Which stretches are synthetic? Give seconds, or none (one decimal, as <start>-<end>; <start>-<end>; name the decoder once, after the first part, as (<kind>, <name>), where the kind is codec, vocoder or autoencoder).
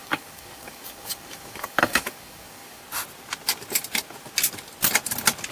0.0-2.8 (codec, DAC)